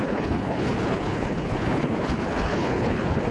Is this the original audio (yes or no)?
no